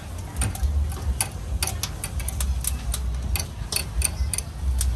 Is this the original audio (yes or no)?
yes